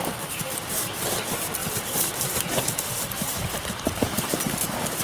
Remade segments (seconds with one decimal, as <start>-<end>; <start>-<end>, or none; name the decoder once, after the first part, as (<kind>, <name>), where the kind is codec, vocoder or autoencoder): 0.0-5.0 (vocoder, BigVGAN v2)